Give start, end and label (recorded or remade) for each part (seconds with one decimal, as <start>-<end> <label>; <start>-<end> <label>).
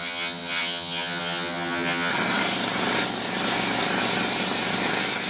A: 0.0-2.1 remade; 2.1-5.3 recorded